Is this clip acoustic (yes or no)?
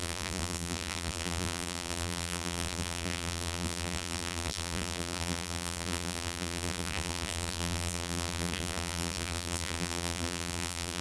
no